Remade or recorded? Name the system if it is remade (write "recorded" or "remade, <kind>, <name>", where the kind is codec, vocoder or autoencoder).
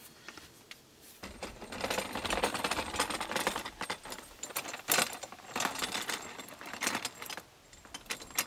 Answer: recorded